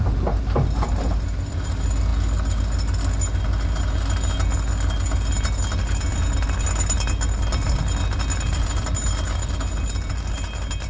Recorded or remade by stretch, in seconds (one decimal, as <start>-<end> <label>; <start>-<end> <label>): 0.0-10.9 recorded

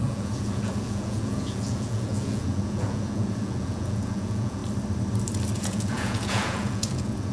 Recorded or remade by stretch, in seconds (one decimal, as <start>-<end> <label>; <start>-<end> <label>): 0.0-4.6 remade; 4.6-5.6 recorded; 5.6-7.3 remade